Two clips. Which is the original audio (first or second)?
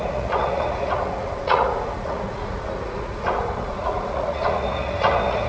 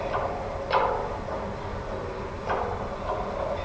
second